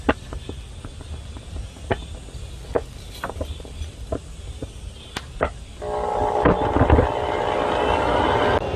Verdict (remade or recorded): recorded